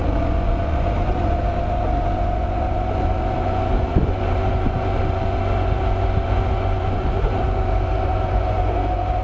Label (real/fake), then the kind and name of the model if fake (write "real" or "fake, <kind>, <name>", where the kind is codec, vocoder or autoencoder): fake, vocoder, Vocos